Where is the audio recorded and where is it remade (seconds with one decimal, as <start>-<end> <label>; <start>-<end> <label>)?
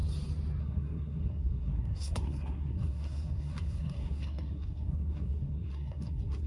0.0-0.6 recorded; 0.6-6.5 remade